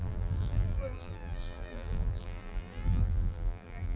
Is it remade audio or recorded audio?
remade